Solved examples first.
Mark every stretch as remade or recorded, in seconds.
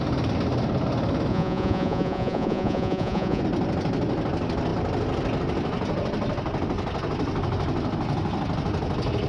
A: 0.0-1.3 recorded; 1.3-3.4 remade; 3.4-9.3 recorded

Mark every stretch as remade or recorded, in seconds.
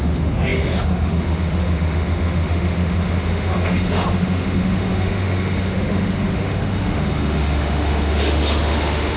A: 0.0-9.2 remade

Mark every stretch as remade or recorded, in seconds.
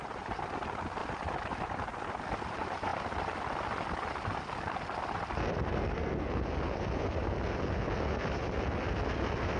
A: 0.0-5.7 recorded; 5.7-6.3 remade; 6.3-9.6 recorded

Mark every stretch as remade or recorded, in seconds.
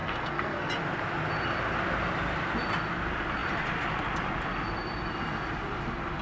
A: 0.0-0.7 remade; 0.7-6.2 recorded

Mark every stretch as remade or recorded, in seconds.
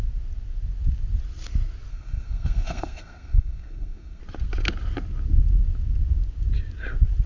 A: 0.0-1.9 recorded; 1.9-4.2 remade; 4.2-7.3 recorded